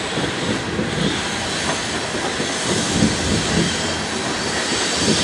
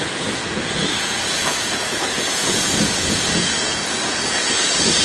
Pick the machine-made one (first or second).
second